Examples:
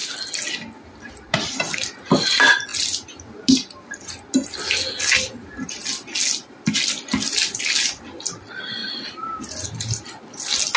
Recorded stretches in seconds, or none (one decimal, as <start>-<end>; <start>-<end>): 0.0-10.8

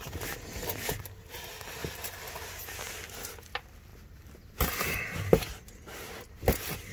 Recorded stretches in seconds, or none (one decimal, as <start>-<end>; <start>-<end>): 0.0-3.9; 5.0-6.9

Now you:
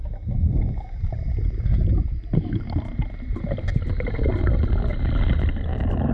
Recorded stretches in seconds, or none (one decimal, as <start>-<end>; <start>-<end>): 0.0-6.1

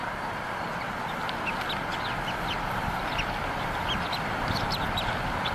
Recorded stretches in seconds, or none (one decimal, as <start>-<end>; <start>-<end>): 0.8-3.0

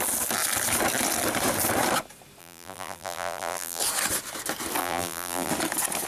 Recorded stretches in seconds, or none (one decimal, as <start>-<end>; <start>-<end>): 0.0-2.4; 3.8-4.8; 5.5-6.1

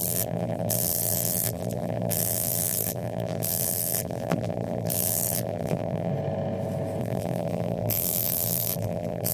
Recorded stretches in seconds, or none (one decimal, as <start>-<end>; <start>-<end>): 6.1-7.0

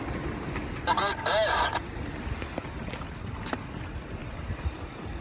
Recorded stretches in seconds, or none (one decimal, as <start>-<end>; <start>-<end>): 0.0-4.2; 4.8-5.2